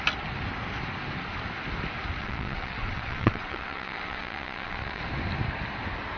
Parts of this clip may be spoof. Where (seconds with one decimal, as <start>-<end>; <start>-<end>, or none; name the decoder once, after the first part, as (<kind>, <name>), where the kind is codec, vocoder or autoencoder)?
2.2-5.0 (vocoder, WaveNeXt)